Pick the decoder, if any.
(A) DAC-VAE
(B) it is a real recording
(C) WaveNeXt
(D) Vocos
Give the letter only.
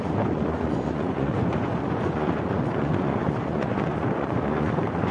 D